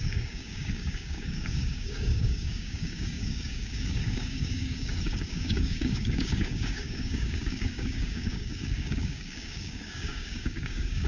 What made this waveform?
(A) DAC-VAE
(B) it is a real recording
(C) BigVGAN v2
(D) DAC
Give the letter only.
D